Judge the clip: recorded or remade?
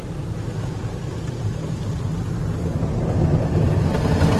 recorded